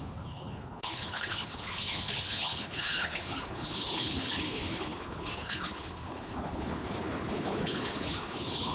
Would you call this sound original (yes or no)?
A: no